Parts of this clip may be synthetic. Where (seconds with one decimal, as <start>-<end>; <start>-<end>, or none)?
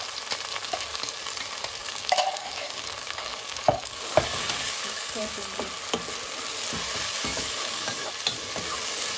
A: 0.6-1.2; 1.8-5.2; 7.3-8.1